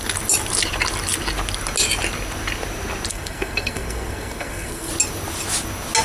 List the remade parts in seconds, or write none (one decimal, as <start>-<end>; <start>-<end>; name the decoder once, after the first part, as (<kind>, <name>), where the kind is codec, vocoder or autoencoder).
3.1-4.9 (codec, SNAC)